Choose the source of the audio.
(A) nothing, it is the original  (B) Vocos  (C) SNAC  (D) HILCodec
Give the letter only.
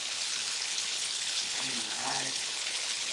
D